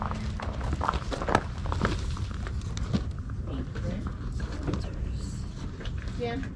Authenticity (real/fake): real